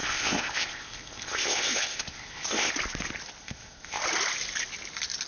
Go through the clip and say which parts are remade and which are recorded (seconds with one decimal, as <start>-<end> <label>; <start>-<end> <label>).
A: 0.0-2.7 remade; 2.7-3.4 recorded; 3.4-4.0 remade; 4.0-5.3 recorded

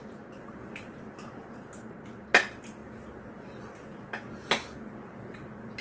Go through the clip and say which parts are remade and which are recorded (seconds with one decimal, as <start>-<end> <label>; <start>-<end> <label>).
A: 0.0-5.8 recorded

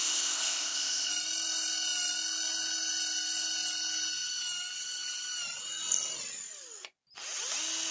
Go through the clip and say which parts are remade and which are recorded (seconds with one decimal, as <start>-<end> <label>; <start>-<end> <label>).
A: 0.0-1.1 remade; 1.1-7.9 recorded

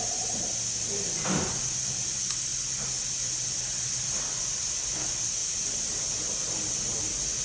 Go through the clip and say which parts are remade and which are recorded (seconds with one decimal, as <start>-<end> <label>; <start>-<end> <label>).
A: 0.0-7.4 recorded

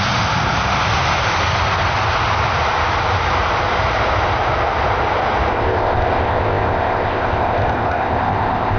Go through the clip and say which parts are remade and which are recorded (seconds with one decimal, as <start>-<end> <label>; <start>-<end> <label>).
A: 0.0-5.5 recorded; 5.5-8.8 remade

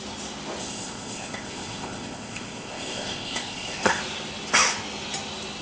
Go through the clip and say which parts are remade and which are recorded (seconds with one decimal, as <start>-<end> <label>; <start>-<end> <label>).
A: 0.0-0.6 recorded; 0.6-4.0 remade; 4.0-5.6 recorded

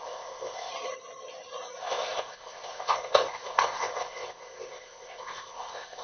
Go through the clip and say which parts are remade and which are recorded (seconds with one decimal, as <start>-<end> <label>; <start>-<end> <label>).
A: 0.0-0.7 remade; 0.7-1.8 recorded; 1.8-6.0 remade